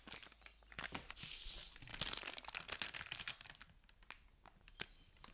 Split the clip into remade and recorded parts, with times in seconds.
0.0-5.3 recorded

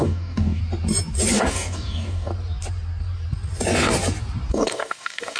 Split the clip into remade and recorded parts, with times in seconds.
0.0-0.6 remade; 0.6-1.5 recorded; 1.5-2.3 remade; 2.3-4.5 recorded; 4.5-5.4 remade

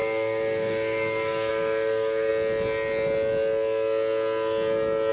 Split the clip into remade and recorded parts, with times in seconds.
0.0-2.3 remade; 2.3-5.1 recorded

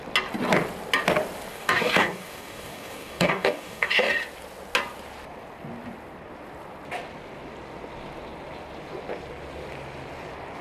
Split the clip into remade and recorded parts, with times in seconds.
0.0-1.5 recorded; 1.5-4.1 remade; 4.1-10.6 recorded